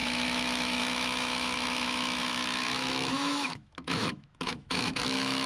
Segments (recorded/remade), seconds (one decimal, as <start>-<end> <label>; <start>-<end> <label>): 0.0-5.5 remade